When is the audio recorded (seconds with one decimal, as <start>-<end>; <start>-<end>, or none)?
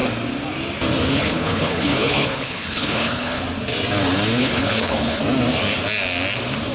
0.0-1.1; 3.4-4.4; 5.2-6.7